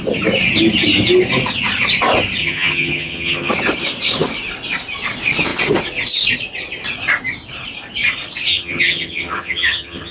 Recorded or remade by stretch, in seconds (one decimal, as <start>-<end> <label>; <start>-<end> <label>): 0.0-2.4 recorded; 2.4-3.5 remade; 3.5-8.5 recorded; 8.5-10.1 remade